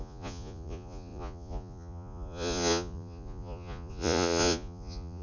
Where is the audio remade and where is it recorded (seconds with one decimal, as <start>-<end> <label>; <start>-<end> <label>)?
0.0-5.2 remade